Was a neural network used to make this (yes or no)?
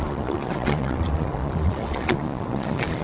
yes